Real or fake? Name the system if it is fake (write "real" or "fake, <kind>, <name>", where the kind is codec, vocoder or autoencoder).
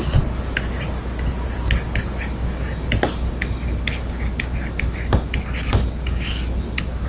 real